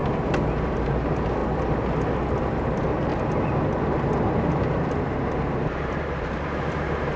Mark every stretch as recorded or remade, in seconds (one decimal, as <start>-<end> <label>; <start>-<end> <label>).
0.0-0.7 recorded; 0.7-1.4 remade; 1.4-2.3 recorded; 2.3-3.1 remade; 3.1-4.4 recorded; 4.4-7.2 remade